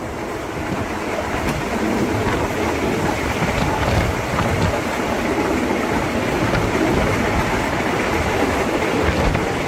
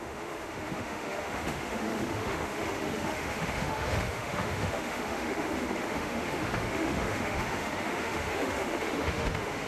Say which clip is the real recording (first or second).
first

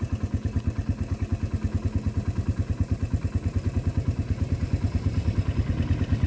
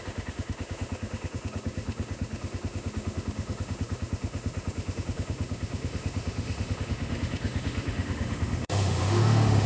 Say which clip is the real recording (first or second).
first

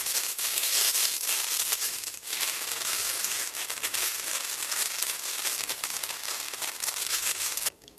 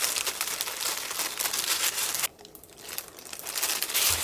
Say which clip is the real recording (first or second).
second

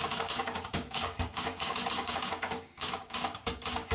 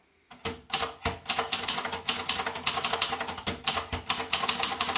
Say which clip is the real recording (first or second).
second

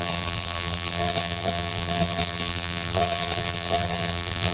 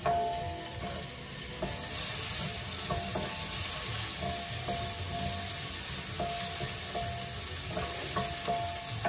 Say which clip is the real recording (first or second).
second